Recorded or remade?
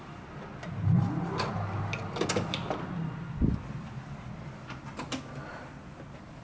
recorded